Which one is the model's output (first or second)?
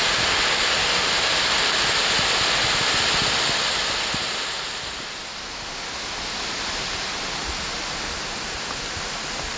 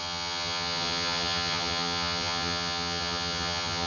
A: second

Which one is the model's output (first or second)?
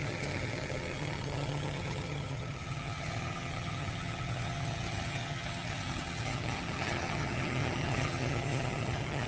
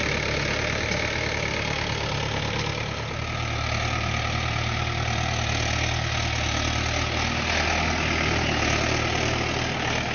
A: first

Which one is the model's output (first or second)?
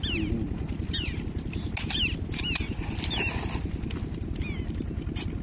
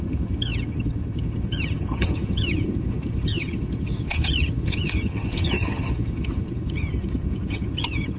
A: second